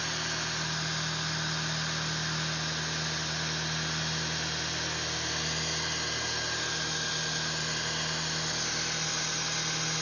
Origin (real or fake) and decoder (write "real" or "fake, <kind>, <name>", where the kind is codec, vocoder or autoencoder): real